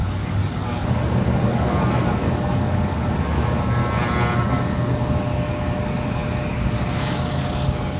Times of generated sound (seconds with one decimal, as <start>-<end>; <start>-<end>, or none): 0.0-3.8; 4.4-8.0